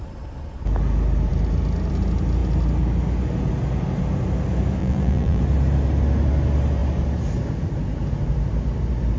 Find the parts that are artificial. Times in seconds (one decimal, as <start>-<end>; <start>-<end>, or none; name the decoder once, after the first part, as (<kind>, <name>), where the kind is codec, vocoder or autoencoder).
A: 4.8-5.4 (vocoder, BigVGAN v2)